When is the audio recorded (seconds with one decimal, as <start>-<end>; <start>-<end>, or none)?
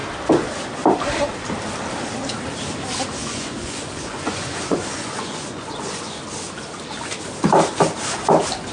0.0-3.2; 6.2-8.7